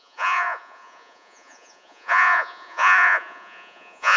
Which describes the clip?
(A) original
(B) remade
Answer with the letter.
B